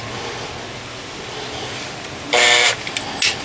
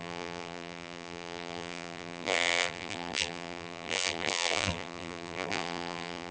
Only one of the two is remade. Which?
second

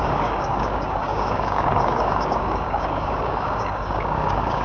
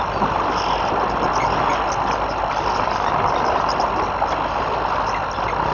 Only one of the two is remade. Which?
first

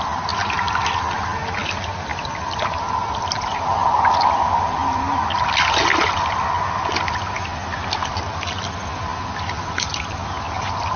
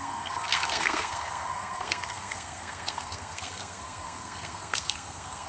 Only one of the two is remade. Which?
second